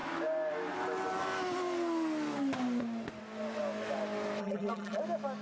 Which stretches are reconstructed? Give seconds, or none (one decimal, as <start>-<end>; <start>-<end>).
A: 4.4-5.0